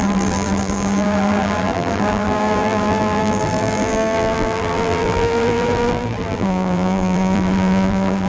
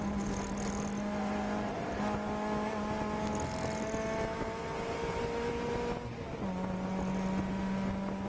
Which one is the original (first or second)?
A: second